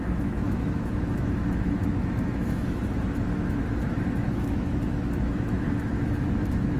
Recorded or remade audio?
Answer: remade